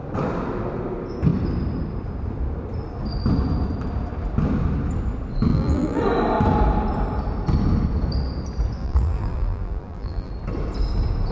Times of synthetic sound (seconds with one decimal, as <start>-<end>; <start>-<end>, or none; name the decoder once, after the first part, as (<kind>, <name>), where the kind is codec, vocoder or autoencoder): 5.5-6.0 (vocoder, BigVGAN v2); 8.8-10.3